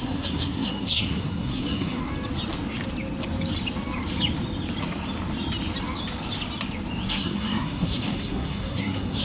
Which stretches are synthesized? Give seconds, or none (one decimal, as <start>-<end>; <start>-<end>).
0.0-2.0; 7.1-9.2